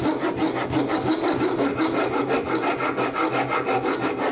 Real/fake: real